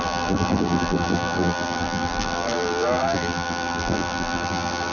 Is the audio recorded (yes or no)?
no